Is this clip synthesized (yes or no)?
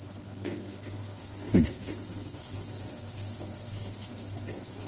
yes